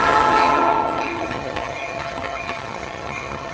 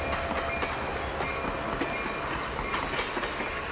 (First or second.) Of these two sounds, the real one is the second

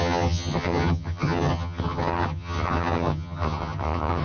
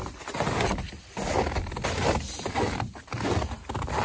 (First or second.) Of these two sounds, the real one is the second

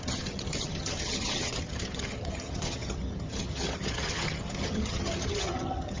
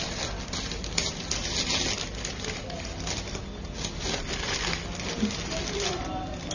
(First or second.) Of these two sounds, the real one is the second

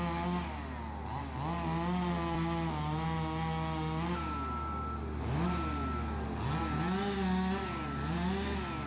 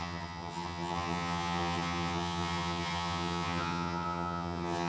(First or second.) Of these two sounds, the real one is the first